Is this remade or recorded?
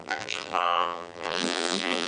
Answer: remade